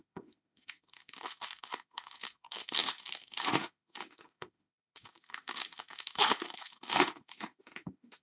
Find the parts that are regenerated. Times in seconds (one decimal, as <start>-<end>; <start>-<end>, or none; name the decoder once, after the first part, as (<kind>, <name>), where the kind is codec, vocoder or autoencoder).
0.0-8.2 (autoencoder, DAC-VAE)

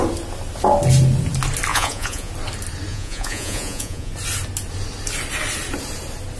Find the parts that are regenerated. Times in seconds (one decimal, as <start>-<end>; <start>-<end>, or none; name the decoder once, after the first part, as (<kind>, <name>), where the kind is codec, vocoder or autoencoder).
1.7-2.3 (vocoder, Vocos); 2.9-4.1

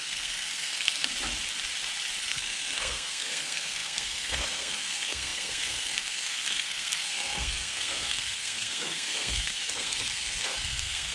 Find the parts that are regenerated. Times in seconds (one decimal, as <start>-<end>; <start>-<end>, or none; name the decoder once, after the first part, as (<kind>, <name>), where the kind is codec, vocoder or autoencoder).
0.0-1.1 (codec, SNAC); 2.2-11.1

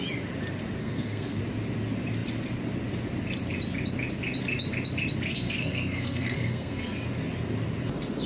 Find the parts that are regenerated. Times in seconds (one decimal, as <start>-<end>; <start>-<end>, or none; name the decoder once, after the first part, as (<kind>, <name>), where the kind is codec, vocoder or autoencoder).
0.8-1.4 (codec, SNAC); 5.3-7.0

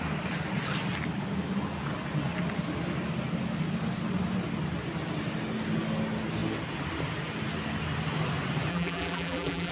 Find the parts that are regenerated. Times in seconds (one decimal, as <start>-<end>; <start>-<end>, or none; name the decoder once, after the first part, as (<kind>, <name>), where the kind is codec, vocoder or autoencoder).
8.7-9.7 (vocoder, BigVGAN v2)